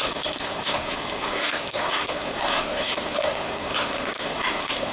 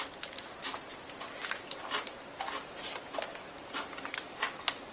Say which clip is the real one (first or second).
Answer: second